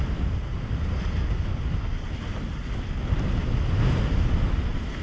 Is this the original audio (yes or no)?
yes